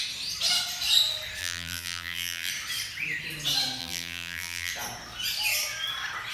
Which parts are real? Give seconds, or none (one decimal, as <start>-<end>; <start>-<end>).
0.0-1.4; 2.5-3.8; 4.7-6.3